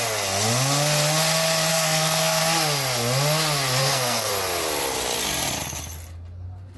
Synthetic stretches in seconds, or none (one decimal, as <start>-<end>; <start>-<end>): 1.7-2.4; 3.8-4.3